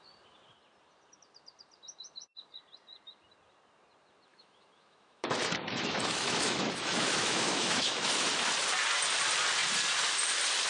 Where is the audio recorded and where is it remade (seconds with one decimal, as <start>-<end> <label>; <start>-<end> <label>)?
0.0-4.3 recorded; 4.3-8.3 remade; 8.3-10.7 recorded

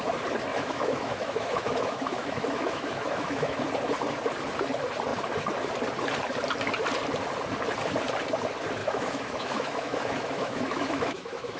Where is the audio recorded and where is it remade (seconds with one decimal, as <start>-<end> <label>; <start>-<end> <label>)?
0.0-0.5 recorded; 0.5-3.6 remade; 3.6-8.8 recorded; 8.8-11.6 remade

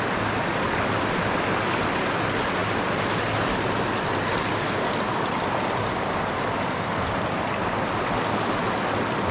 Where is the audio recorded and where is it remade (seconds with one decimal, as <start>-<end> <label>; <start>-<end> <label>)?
0.0-9.3 recorded